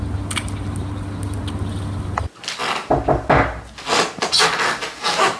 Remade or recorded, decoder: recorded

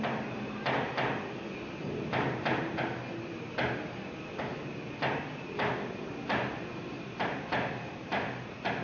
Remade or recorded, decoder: recorded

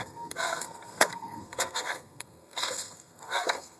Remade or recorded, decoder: remade, codec, SNAC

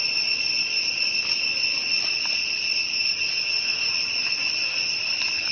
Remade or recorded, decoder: recorded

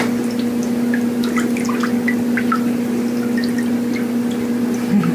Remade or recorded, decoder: recorded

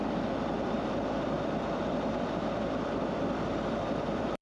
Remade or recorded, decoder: remade, vocoder, BigVGAN v2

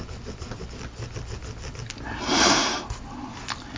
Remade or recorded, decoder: recorded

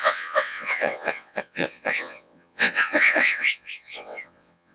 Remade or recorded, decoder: remade, vocoder, WaveNeXt